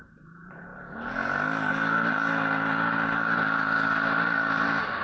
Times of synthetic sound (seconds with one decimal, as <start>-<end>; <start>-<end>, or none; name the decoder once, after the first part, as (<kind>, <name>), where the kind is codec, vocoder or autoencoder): 0.0-0.7 (vocoder, BigVGAN v2); 1.7-5.0